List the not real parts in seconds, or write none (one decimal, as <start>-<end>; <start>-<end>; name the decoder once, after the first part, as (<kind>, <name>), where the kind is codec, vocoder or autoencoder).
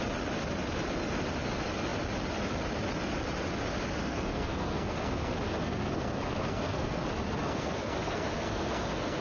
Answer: 4.0-7.0 (codec, SNAC); 7.4-9.2